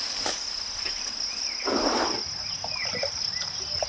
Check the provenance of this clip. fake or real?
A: real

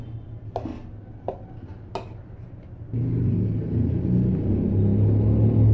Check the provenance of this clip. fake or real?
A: real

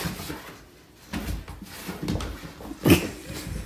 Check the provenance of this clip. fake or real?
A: real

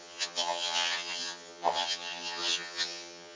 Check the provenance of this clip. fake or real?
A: fake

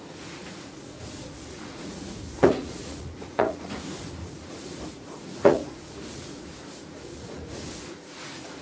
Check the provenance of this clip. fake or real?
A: fake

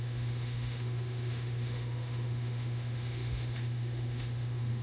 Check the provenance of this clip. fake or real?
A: fake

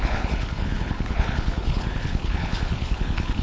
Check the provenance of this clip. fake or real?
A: fake